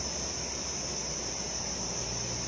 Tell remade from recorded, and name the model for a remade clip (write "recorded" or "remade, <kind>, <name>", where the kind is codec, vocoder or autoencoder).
recorded